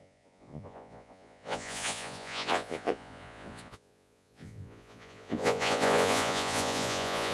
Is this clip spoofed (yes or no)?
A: yes